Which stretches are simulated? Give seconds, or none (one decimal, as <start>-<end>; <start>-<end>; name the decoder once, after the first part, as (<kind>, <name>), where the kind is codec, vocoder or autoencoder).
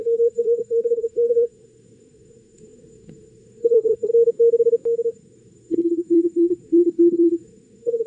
0.0-4.1 (codec, SNAC); 5.1-8.1